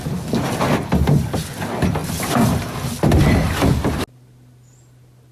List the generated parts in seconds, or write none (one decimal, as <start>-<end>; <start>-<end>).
none